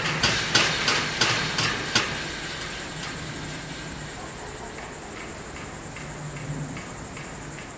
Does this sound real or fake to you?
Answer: real